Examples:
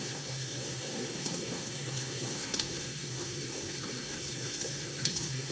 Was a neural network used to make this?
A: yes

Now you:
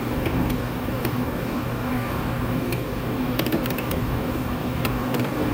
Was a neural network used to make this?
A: yes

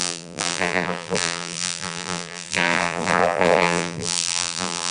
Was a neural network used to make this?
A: yes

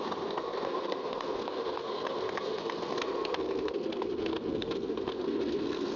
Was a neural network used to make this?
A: yes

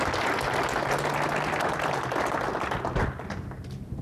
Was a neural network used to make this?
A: no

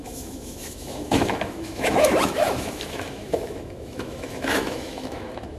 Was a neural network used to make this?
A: yes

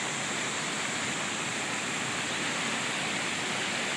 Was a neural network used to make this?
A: no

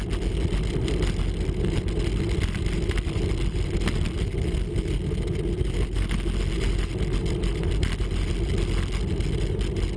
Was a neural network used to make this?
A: no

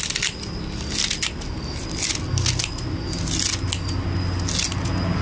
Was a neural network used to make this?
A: no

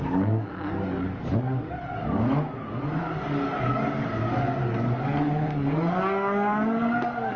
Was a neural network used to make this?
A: yes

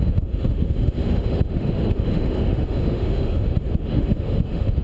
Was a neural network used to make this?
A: yes